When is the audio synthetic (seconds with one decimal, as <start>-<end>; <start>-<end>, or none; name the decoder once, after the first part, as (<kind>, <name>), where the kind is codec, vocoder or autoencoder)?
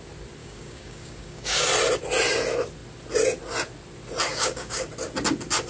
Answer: 0.4-1.7 (codec, DAC); 4.3-4.9